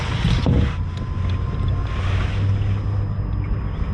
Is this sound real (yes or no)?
yes